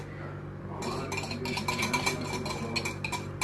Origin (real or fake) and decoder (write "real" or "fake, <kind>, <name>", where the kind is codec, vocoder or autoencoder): real